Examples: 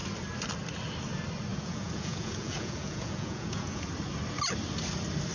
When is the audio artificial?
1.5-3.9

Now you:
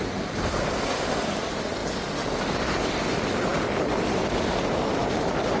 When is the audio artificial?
none

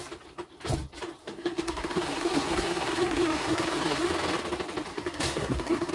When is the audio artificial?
1.2-4.1; 4.9-5.9

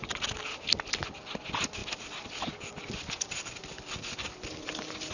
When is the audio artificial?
1.8-5.1

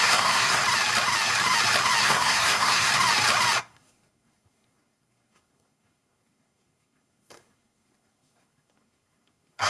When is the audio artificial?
0.0-0.6; 2.0-2.9; 3.6-9.7

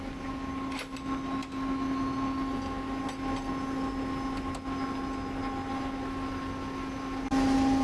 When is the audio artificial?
none